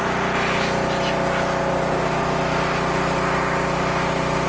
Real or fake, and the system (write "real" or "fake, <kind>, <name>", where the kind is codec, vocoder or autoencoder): real